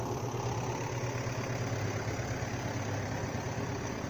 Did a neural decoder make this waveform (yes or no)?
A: no